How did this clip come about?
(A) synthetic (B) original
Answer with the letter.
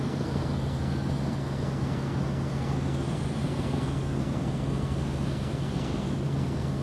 A